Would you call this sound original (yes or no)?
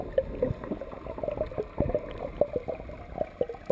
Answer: yes